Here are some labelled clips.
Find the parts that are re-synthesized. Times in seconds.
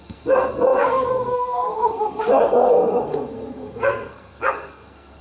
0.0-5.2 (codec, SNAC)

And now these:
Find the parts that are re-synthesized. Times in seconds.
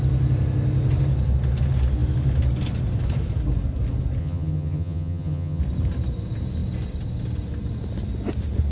4.2-5.6 (vocoder, HiFi-GAN)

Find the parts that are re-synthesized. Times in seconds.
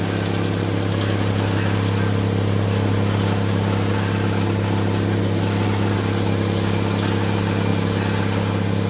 none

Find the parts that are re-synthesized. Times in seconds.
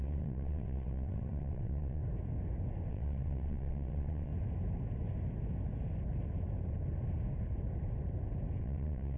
0.0-2.0 (vocoder, WaveNeXt); 2.9-4.3; 8.6-9.2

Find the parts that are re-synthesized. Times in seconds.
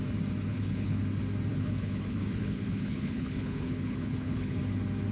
0.5-1.0 (codec, HILCodec); 1.5-4.6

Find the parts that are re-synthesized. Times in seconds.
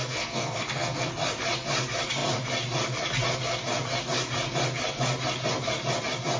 0.0-1.1 (codec, SNAC)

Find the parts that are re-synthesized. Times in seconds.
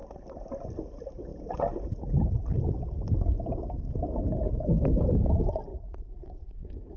5.7-7.0 (vocoder, Vocos)